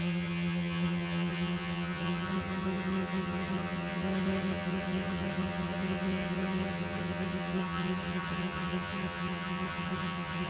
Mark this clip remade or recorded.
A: remade